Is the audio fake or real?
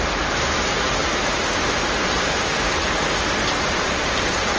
real